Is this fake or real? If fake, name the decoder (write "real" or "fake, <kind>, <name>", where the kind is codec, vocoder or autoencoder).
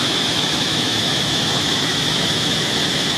fake, autoencoder, DAC-VAE